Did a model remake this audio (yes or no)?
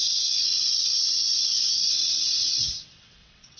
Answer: yes